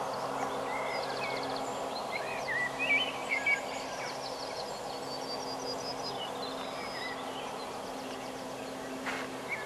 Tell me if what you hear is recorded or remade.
recorded